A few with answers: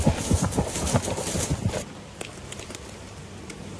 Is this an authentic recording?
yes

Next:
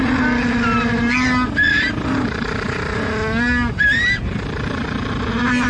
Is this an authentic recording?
yes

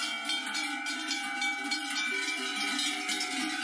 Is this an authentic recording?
yes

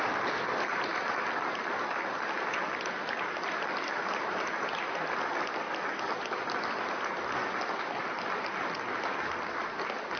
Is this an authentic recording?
yes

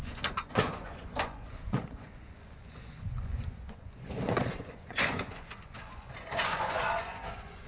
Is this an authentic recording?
no